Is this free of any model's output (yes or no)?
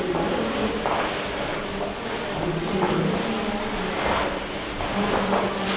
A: yes